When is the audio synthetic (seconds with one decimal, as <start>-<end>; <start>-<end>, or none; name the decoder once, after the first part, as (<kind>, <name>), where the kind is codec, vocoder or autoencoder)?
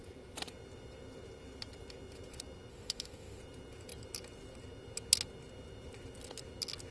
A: 2.7-3.4 (autoencoder, DAC-VAE)